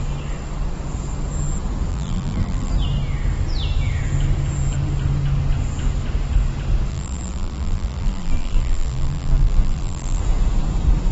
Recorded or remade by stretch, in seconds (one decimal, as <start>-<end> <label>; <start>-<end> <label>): 0.0-1.9 recorded; 1.9-2.7 remade; 2.7-6.9 recorded; 6.9-10.2 remade; 10.2-11.1 recorded